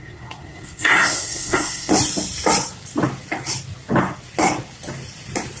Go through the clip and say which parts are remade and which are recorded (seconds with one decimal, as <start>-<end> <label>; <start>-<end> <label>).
0.0-1.9 remade; 1.9-5.6 recorded